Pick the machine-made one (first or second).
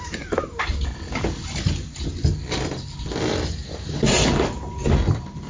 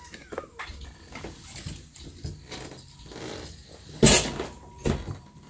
first